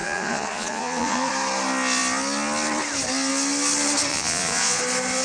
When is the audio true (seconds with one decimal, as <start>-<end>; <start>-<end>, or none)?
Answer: 1.3-4.1; 4.8-5.2